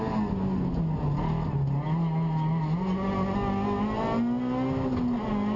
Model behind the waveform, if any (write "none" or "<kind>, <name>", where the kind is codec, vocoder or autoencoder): none